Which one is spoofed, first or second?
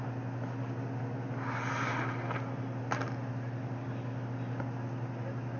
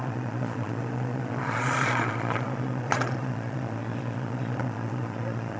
second